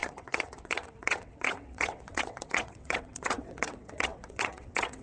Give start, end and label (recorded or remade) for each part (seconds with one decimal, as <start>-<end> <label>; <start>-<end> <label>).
0.0-5.0 remade